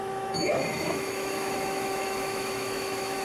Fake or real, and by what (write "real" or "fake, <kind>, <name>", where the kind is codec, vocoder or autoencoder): fake, autoencoder, DAC-VAE